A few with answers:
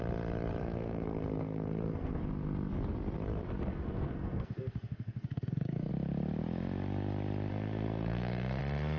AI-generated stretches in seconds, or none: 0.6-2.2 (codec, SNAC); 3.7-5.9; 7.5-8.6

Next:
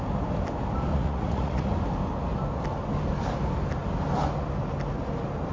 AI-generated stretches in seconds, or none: 0.9-1.7 (vocoder, Vocos)

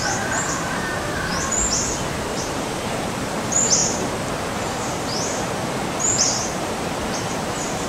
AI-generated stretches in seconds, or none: 0.0-1.3 (vocoder, BigVGAN v2); 2.1-7.9

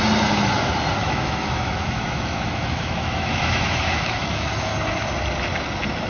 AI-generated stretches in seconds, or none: 1.0-4.7 (autoencoder, DAC-VAE)

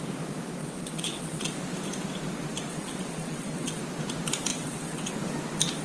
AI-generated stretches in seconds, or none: 0.6-1.5 (vocoder, WaveNeXt); 2.7-3.8; 4.5-5.1